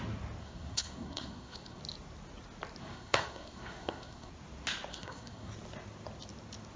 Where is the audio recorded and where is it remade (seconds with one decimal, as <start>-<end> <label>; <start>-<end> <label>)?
0.0-0.4 recorded; 0.4-1.8 remade; 1.8-2.8 recorded; 2.8-4.3 remade; 4.3-4.9 recorded; 4.9-5.5 remade; 5.5-6.8 recorded